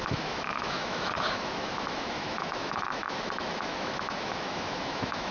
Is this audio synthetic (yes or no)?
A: yes